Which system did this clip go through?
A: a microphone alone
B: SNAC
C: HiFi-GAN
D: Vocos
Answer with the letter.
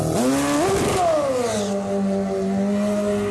A